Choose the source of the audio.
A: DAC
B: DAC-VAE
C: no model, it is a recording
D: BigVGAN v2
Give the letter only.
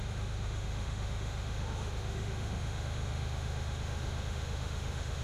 B